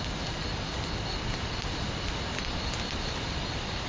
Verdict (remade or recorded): remade